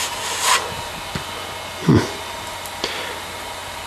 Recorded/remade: recorded